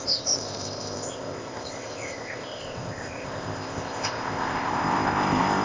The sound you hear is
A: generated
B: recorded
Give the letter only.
A